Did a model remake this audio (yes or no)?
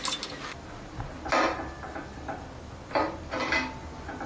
no